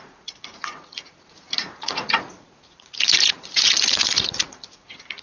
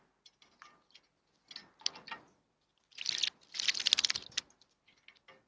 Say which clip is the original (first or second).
second